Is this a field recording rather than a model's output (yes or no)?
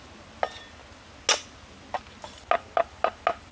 yes